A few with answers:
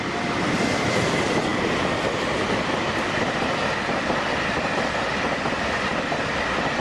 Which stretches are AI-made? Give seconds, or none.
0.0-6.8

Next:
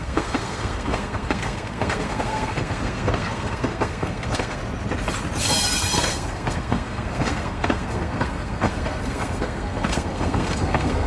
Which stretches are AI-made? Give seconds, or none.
0.0-4.6; 5.4-11.1